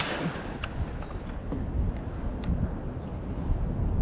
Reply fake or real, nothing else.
real